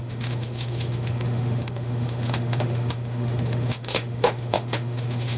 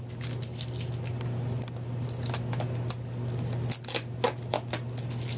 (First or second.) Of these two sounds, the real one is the second